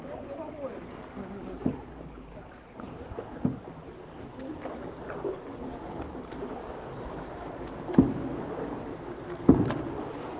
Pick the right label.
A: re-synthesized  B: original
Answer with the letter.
B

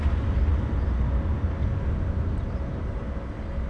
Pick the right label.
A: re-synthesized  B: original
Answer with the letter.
B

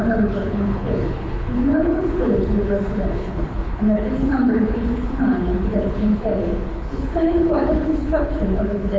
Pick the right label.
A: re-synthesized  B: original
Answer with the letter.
A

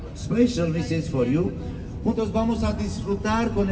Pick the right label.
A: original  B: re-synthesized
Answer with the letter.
A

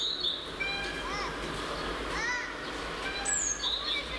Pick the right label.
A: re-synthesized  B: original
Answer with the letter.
B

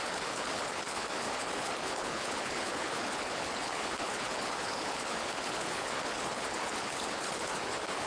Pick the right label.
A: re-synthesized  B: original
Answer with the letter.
A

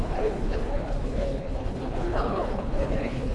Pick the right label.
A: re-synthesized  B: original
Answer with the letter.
A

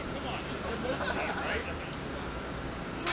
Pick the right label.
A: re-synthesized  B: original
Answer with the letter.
B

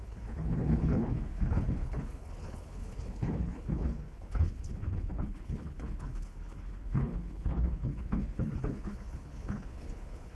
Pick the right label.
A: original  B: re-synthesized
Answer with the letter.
B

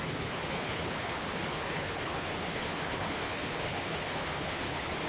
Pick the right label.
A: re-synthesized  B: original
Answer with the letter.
A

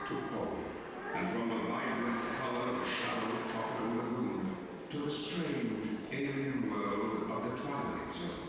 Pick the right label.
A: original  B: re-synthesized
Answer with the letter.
A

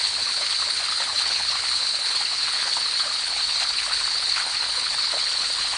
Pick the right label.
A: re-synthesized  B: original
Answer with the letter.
A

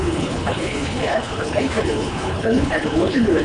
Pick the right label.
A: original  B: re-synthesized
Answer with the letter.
B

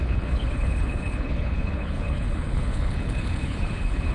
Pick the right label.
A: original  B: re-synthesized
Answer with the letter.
B